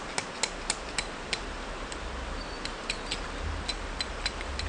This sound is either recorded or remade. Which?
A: recorded